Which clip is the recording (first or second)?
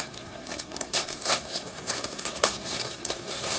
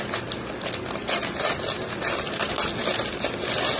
second